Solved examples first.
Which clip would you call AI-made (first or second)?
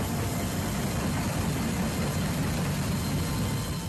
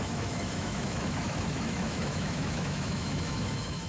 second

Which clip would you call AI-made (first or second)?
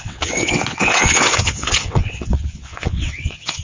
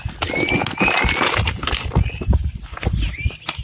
first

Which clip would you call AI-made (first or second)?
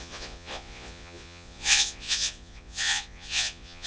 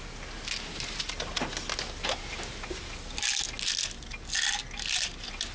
first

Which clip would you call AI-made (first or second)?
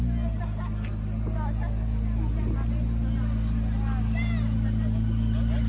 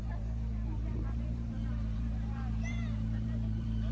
second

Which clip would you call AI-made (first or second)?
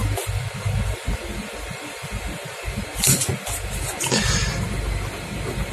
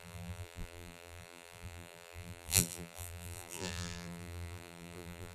second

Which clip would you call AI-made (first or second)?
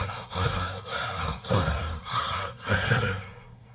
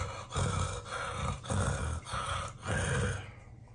first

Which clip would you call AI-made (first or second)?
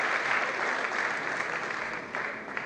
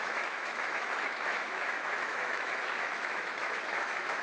second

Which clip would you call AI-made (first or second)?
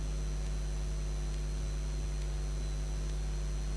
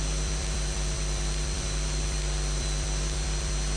second